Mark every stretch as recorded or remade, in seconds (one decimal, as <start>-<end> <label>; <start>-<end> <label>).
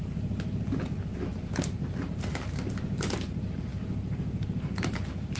0.0-1.3 recorded; 1.3-2.3 remade; 2.3-5.4 recorded